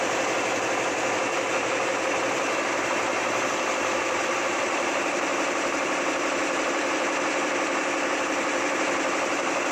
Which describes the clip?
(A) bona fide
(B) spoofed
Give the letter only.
B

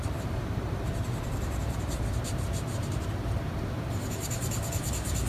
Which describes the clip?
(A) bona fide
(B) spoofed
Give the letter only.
B